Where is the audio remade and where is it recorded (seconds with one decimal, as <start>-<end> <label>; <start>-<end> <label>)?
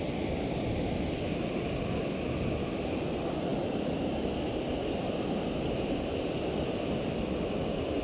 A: 0.0-8.0 recorded